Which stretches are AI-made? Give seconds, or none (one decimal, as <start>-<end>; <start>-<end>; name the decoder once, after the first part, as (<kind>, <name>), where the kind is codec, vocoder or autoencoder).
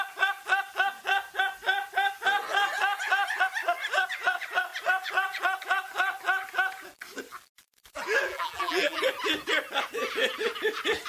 8.3-9.0 (vocoder, BigVGAN v2)